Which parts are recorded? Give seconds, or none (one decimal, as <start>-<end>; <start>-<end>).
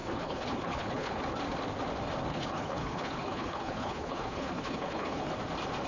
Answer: 1.2-2.3; 5.3-5.9